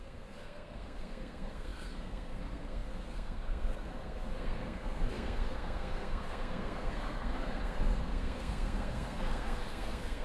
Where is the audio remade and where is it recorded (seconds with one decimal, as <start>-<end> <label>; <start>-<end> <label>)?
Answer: 0.0-10.2 remade